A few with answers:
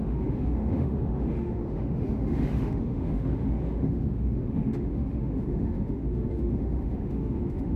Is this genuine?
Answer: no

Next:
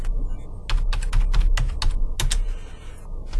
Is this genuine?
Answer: yes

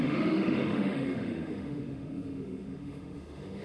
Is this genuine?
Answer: no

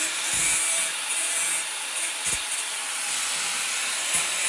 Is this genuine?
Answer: yes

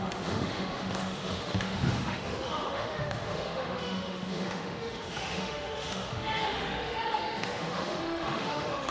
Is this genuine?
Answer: no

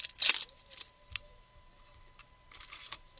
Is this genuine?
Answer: yes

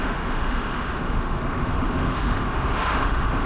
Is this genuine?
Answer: no